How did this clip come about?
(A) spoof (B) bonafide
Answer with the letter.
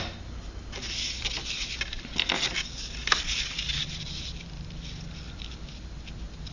B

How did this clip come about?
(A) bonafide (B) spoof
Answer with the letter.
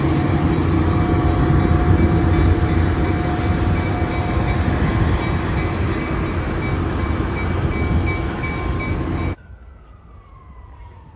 A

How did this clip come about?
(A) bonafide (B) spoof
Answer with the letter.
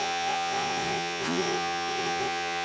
B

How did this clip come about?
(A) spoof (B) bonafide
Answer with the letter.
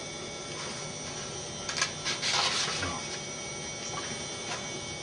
B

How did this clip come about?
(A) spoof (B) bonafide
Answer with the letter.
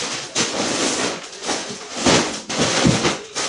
A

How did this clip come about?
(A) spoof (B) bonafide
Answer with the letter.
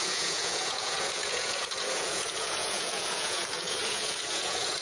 A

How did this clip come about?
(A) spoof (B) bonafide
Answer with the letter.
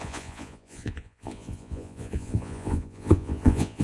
A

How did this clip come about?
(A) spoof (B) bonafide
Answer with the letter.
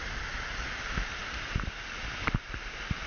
B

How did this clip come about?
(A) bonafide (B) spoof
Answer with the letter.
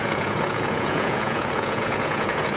B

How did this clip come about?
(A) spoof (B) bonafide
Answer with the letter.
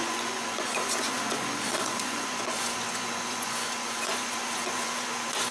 A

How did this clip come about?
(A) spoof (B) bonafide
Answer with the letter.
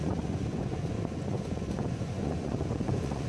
A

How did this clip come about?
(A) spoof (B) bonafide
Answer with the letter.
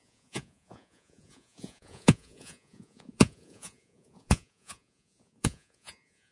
A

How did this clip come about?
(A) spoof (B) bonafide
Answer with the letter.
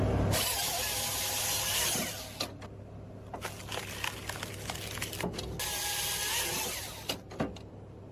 B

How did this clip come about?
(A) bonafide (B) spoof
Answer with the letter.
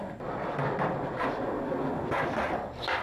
A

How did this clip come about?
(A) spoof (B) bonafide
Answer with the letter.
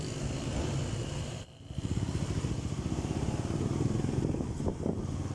B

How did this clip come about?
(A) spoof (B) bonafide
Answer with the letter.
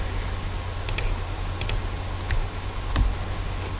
B